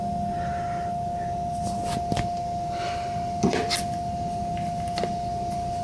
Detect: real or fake real